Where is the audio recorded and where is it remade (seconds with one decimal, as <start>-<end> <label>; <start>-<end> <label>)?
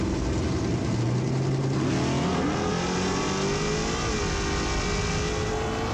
0.0-5.9 recorded